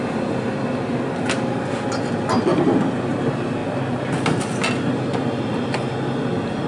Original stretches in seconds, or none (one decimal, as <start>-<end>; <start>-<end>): 0.0-6.7